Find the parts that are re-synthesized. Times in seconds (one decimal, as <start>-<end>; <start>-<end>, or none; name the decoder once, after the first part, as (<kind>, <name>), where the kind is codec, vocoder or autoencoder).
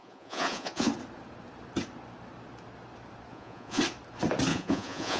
0.0-0.9 (vocoder, Vocos); 3.3-3.8; 4.5-5.2